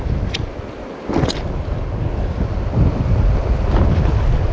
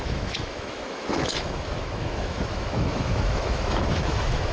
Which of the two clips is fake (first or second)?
second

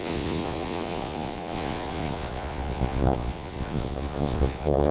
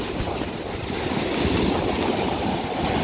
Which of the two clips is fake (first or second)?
first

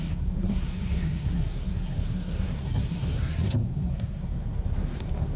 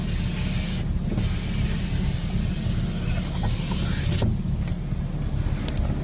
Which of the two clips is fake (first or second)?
first